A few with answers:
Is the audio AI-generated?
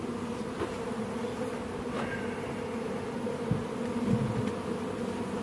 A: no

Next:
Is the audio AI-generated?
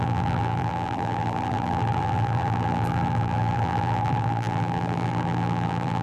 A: yes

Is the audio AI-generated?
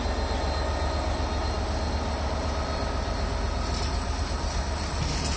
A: no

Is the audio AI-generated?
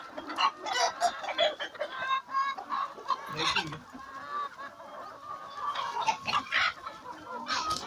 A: no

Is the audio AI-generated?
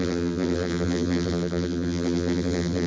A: yes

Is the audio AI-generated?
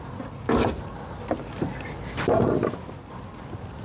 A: no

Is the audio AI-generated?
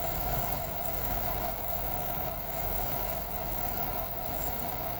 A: yes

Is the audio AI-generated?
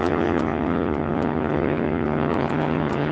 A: yes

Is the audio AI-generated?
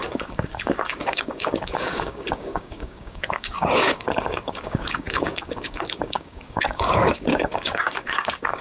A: yes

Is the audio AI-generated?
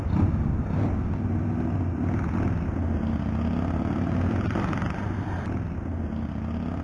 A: no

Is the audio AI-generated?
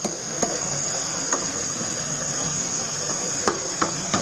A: yes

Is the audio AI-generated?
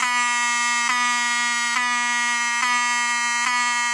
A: no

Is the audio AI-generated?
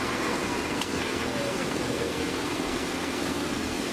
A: yes